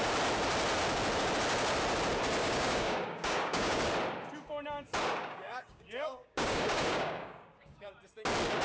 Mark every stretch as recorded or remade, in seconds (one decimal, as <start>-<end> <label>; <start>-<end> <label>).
0.0-2.4 recorded; 2.4-3.8 remade; 3.8-5.2 recorded; 5.2-7.9 remade; 7.9-8.6 recorded